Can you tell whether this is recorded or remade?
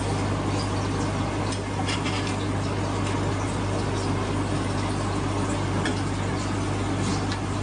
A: recorded